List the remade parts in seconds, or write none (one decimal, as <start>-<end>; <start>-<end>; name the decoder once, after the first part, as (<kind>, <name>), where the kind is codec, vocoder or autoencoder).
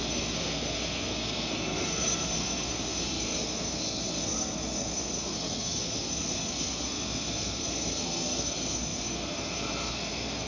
0.0-10.5 (codec, SNAC)